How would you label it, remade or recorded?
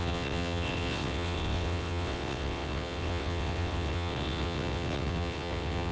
remade